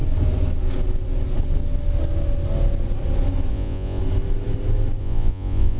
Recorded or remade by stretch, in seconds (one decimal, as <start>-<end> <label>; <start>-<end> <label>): 0.0-3.5 recorded; 3.5-4.0 remade; 4.0-5.0 recorded; 5.0-5.8 remade